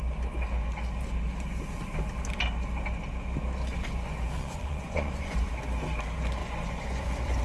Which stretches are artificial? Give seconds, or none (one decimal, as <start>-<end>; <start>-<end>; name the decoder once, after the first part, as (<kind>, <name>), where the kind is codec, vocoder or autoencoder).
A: 3.7-5.5 (vocoder, Vocos); 6.4-7.4